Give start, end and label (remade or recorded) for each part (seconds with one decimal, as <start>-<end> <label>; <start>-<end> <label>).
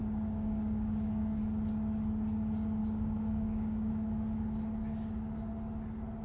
0.0-1.4 remade; 1.4-2.8 recorded; 2.8-3.9 remade; 3.9-6.2 recorded